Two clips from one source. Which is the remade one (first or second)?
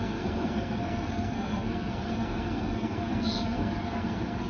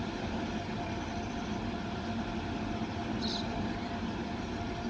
first